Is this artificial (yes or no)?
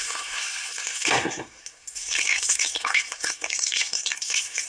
yes